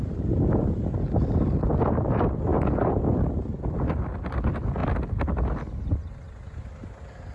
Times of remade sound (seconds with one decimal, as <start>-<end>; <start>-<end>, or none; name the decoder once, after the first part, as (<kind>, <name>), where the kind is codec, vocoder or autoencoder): none